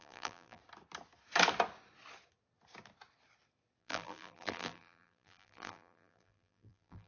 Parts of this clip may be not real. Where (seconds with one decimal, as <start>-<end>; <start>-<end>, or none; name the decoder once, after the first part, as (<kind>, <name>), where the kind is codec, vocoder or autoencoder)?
0.0-0.6 (vocoder, BigVGAN v2); 3.8-7.1